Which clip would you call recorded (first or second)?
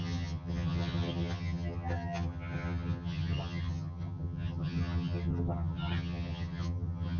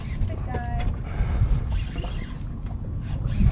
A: second